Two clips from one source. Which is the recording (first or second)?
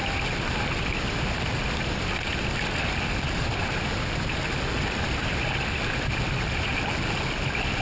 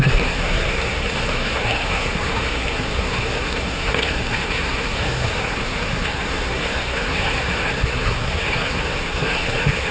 first